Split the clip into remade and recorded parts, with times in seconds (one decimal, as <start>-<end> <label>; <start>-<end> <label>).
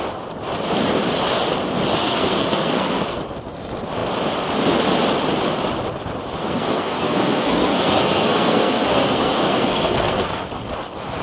0.0-2.0 recorded; 2.0-3.2 remade; 3.2-6.4 recorded; 6.4-10.5 remade; 10.5-11.2 recorded